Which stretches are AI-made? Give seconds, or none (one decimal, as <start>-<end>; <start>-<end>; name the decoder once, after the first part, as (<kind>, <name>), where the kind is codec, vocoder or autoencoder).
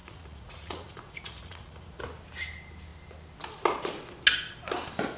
0.0-2.0 (vocoder, Vocos)